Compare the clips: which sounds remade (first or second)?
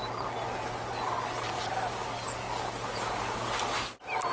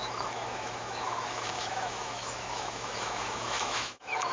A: second